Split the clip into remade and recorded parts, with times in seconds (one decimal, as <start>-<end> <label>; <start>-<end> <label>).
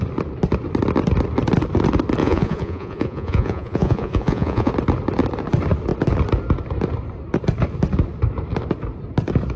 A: 0.0-2.2 recorded; 2.2-4.7 remade; 4.7-9.6 recorded